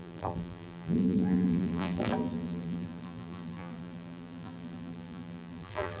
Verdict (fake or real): fake